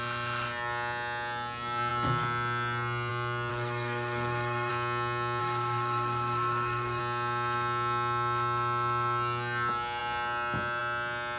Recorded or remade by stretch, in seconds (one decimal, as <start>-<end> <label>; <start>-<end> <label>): 0.0-3.5 recorded; 3.5-4.7 remade; 4.7-5.4 recorded; 5.4-7.0 remade; 7.0-11.4 recorded